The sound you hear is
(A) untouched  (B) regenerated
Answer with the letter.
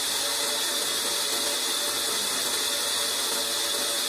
A